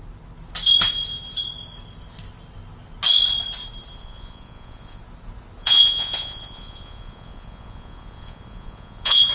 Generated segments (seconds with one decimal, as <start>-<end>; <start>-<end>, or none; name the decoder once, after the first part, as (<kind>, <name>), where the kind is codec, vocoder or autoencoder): 4.0-5.0 (vocoder, Vocos); 5.6-9.3